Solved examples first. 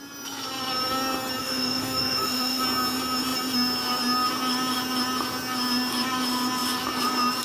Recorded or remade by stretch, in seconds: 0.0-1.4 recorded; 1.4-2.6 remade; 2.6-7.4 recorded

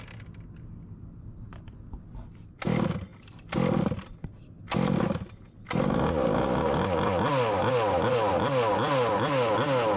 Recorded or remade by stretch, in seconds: 0.0-10.0 recorded

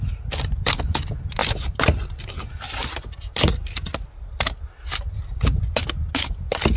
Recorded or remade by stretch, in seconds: 0.0-6.8 recorded